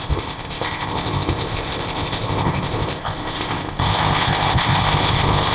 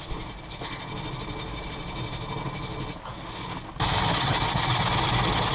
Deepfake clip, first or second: first